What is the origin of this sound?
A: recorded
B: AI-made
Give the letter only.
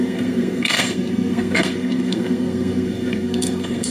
B